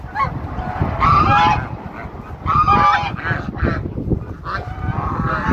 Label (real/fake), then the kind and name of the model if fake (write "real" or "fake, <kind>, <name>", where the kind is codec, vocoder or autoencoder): real